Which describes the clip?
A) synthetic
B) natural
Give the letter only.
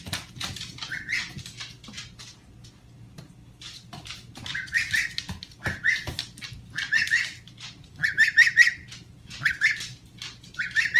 B